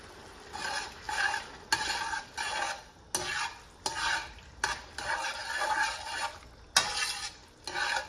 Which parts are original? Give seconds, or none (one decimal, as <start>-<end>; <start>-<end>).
0.0-8.1